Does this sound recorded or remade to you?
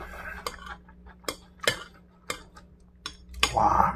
recorded